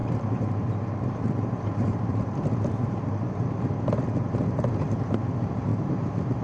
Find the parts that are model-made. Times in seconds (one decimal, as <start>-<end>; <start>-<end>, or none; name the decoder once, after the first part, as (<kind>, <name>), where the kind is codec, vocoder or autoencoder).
0.0-3.0 (vocoder, BigVGAN v2); 5.7-6.4